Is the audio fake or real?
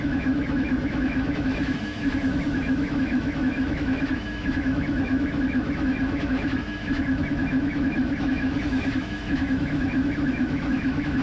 fake